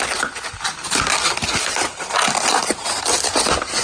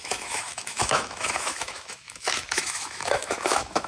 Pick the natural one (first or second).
first